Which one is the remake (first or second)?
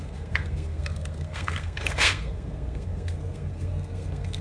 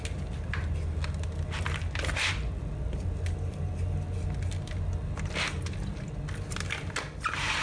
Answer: first